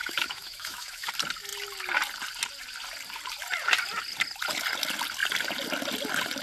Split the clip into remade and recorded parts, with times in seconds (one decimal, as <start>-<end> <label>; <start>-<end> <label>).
0.0-1.1 remade; 1.1-6.4 recorded